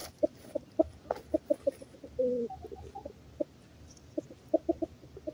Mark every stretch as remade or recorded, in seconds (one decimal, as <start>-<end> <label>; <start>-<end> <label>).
0.0-0.5 remade; 0.5-5.3 recorded

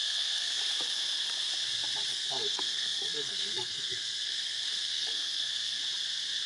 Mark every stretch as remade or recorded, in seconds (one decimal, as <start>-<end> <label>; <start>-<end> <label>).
0.0-0.6 remade; 0.6-2.1 recorded; 2.1-5.8 remade; 5.8-6.5 recorded